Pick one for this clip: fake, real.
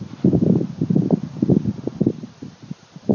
real